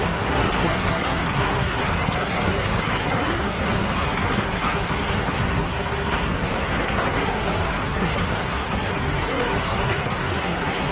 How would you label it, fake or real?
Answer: fake